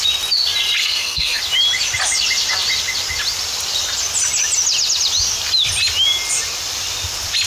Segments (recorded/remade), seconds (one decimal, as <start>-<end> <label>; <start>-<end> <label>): 0.0-0.8 recorded; 0.8-1.4 remade; 1.4-7.5 recorded